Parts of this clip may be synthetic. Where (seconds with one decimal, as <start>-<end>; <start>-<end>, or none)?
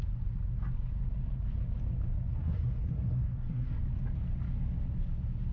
2.3-3.8